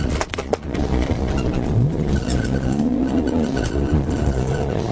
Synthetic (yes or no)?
yes